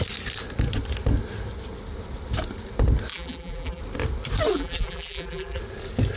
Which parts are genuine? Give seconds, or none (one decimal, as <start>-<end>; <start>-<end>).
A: 0.0-3.1; 3.8-4.5; 5.6-6.2